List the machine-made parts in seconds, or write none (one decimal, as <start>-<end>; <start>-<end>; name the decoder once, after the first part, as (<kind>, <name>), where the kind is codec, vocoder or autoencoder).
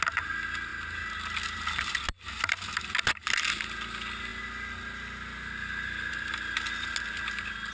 none